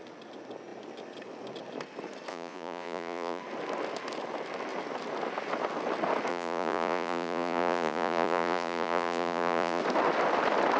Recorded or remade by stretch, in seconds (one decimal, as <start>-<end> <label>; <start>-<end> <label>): 0.0-2.3 recorded; 2.3-3.4 remade; 3.4-6.3 recorded; 6.3-9.8 remade; 9.8-10.8 recorded